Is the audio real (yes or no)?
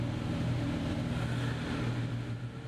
yes